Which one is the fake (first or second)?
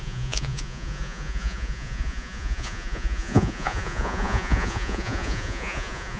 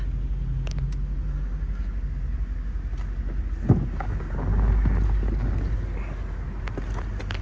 first